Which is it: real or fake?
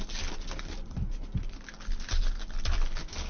real